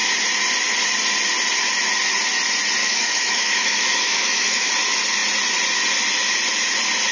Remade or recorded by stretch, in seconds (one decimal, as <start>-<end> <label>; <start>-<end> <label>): 0.0-2.8 recorded; 2.8-4.7 remade; 4.7-7.1 recorded